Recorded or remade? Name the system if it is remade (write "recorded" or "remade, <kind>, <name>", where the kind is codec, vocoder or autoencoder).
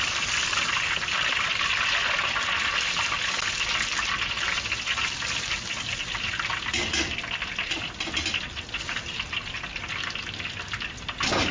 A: recorded